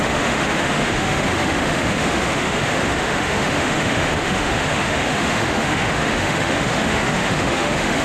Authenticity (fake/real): fake